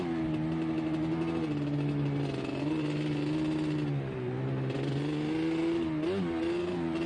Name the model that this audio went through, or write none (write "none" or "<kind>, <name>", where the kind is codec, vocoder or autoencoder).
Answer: none